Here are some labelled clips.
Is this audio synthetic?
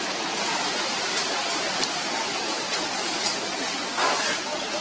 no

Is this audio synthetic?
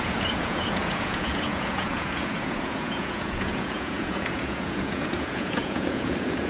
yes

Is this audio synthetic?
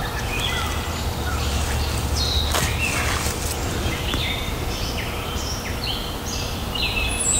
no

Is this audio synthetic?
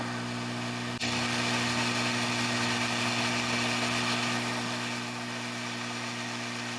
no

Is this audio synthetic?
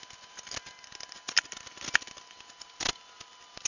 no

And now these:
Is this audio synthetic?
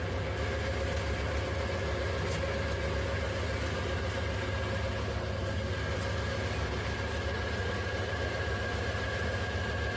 no